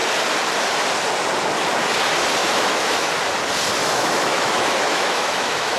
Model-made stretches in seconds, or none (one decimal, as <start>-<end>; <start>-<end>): 2.4-3.1; 3.8-5.8